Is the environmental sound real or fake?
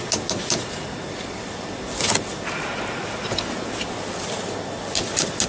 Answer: real